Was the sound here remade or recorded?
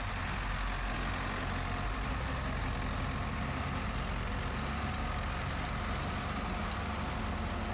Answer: recorded